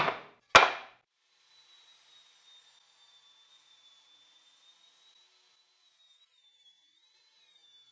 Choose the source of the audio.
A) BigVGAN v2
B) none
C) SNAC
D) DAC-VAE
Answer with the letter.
B